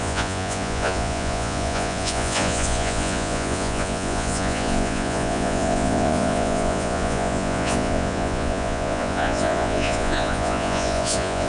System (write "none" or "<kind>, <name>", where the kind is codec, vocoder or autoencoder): vocoder, Vocos